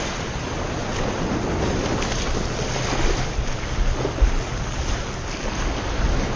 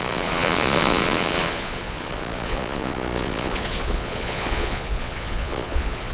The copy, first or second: second